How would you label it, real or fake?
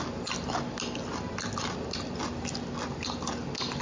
real